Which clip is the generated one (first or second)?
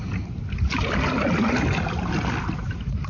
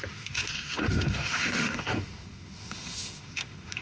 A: second